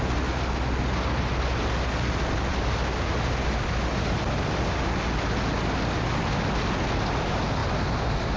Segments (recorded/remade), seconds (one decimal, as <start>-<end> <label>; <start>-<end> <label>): 0.0-8.4 recorded